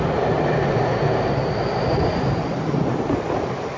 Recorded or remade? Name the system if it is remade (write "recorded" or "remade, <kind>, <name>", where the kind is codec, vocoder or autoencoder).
recorded